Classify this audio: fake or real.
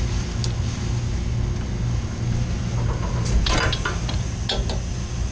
real